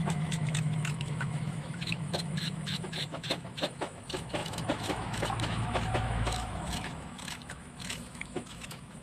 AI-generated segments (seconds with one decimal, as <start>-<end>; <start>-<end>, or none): 0.0-9.0